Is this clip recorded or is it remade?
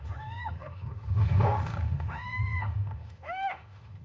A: remade